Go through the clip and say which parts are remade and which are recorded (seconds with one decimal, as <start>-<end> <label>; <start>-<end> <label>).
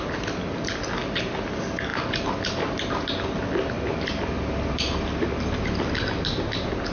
0.0-6.9 recorded